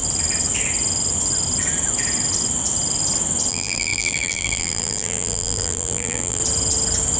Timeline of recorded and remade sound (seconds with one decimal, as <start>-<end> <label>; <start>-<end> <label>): 0.0-3.5 recorded; 3.5-6.4 remade; 6.4-7.2 recorded